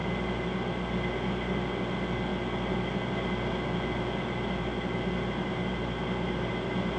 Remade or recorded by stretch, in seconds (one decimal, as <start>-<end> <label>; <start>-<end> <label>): 0.0-7.0 recorded